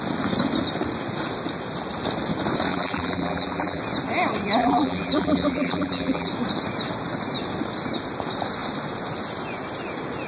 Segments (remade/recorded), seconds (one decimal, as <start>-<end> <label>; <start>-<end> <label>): 0.0-2.7 recorded; 2.7-3.8 remade; 3.8-4.6 recorded; 4.6-6.3 remade; 6.3-10.3 recorded